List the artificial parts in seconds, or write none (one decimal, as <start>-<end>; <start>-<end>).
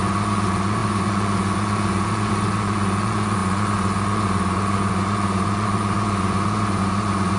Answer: 0.0-7.4